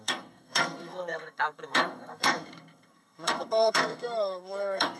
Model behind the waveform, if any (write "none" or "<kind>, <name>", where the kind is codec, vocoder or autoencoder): codec, SNAC